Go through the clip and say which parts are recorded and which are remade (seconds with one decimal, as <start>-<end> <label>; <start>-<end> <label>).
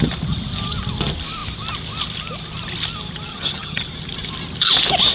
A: 0.0-3.3 recorded; 3.3-3.8 remade; 3.8-5.1 recorded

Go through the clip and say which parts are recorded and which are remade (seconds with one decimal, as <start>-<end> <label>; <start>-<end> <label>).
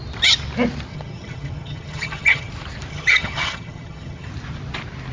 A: 0.0-0.9 recorded; 0.9-2.5 remade; 2.5-2.9 recorded; 2.9-4.3 remade; 4.3-5.1 recorded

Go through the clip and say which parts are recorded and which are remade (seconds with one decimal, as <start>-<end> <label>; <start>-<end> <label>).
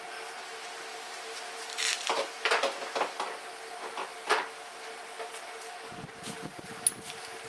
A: 0.0-7.5 recorded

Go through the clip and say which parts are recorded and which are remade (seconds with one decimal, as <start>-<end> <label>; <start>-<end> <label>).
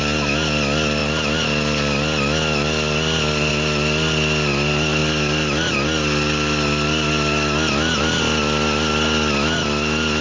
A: 0.0-10.2 recorded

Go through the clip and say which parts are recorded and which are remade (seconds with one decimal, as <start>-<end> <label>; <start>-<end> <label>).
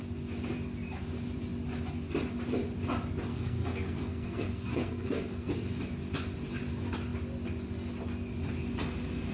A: 0.0-3.3 recorded; 3.3-5.5 remade; 5.5-9.3 recorded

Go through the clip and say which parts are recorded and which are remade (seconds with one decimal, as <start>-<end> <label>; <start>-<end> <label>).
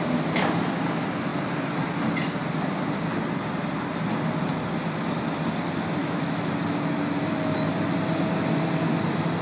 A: 0.0-6.0 recorded; 6.0-6.5 remade; 6.5-9.4 recorded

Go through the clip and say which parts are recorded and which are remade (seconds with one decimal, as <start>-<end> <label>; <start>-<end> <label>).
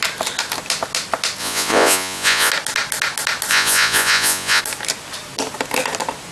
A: 0.0-1.4 recorded; 1.4-2.5 remade; 2.5-3.5 recorded; 3.5-4.6 remade; 4.6-6.3 recorded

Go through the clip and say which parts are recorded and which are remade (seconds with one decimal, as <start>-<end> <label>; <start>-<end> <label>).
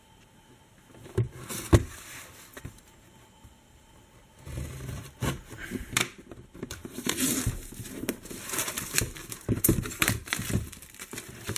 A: 0.0-6.8 recorded; 6.8-7.4 remade; 7.4-11.6 recorded